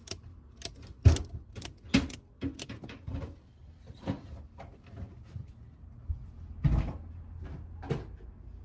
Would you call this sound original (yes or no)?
yes